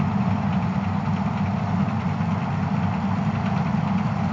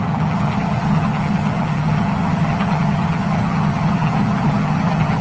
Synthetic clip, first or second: second